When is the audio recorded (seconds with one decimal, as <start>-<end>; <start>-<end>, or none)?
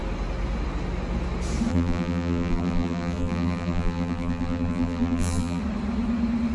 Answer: 0.0-1.7; 5.6-6.5